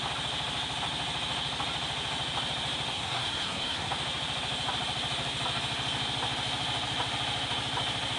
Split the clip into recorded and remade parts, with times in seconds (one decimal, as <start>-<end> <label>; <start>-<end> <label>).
0.0-2.9 recorded; 2.9-3.9 remade; 3.9-8.2 recorded